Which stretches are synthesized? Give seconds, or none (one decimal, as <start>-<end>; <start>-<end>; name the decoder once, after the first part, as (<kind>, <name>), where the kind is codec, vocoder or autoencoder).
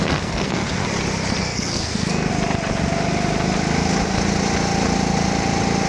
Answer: 0.0-0.8 (codec, SNAC); 1.4-2.3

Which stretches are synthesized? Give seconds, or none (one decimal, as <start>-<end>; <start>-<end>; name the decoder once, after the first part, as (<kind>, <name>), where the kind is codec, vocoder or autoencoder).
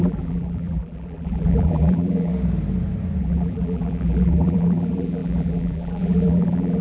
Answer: 0.0-2.3 (vocoder, BigVGAN v2); 3.2-6.8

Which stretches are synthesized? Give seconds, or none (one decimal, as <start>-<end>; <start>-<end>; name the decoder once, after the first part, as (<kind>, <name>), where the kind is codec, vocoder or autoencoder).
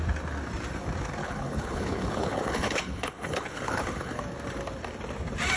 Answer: 1.2-4.2 (codec, HILCodec)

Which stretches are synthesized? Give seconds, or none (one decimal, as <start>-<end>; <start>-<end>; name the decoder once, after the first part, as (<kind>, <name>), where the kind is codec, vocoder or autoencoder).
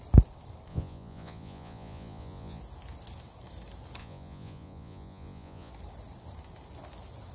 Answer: 0.7-2.6 (vocoder, Vocos); 4.0-5.7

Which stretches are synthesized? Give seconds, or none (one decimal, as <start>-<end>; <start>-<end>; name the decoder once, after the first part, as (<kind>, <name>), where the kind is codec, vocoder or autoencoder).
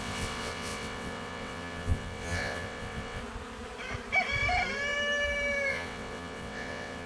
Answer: 0.0-3.2 (vocoder, WaveNeXt); 5.7-7.1